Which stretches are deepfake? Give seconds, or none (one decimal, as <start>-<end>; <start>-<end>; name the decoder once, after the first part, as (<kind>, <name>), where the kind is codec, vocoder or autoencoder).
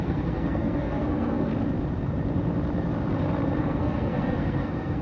0.0-1.5 (codec, SNAC); 3.6-5.0